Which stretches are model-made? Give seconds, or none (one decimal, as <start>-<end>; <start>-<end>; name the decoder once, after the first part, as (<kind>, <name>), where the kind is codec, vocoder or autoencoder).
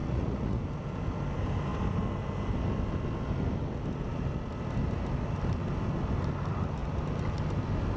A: 0.0-0.6 (vocoder, Vocos)